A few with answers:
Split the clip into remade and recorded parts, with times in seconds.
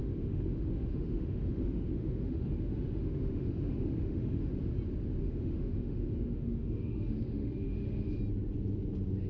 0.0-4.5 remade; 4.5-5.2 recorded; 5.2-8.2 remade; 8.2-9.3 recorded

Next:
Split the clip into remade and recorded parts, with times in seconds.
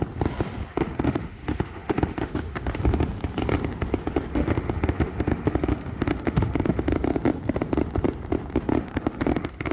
0.0-0.7 recorded; 0.7-2.8 remade; 2.8-4.3 recorded; 4.3-6.9 remade; 6.9-8.8 recorded; 8.8-9.7 remade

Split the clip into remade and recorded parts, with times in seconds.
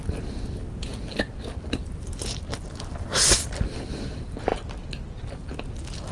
0.0-6.1 recorded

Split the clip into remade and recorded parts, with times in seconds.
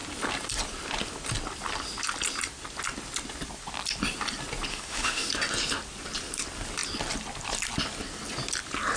0.0-4.7 recorded; 4.7-5.3 remade; 5.3-9.0 recorded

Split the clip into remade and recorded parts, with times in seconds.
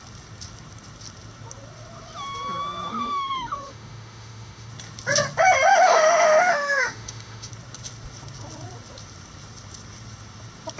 0.0-2.9 recorded; 2.9-4.7 remade; 4.7-5.7 recorded; 5.7-7.5 remade; 7.5-10.8 recorded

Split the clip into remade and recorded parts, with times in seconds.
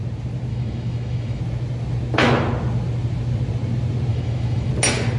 0.0-0.5 recorded; 0.5-1.4 remade; 1.4-4.1 recorded; 4.1-4.7 remade; 4.7-5.2 recorded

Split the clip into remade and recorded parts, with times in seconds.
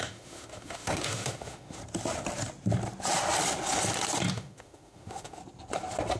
0.0-1.8 remade; 1.8-4.3 recorded; 4.3-5.4 remade; 5.4-6.2 recorded